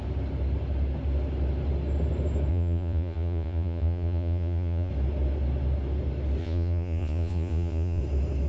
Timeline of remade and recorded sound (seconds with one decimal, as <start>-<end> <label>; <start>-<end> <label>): 0.0-2.5 recorded; 2.5-4.9 remade; 4.9-6.4 recorded; 6.4-8.0 remade; 8.0-8.5 recorded